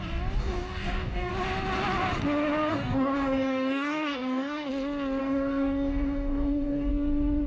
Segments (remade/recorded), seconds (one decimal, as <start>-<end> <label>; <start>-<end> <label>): 0.0-0.4 recorded; 0.4-1.3 remade; 1.3-2.7 recorded; 2.7-4.7 remade; 4.7-5.2 recorded; 5.2-6.9 remade; 6.9-7.5 recorded